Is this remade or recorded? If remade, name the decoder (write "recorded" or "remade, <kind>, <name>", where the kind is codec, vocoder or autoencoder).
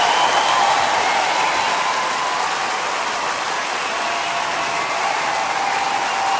recorded